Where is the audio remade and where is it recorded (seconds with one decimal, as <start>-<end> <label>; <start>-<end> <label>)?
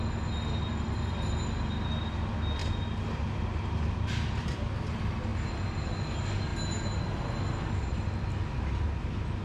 0.0-2.6 recorded; 2.6-4.7 remade; 4.7-9.4 recorded